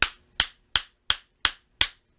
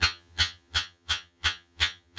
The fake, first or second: second